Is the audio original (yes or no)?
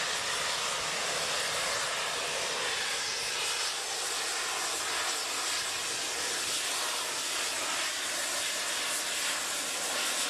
yes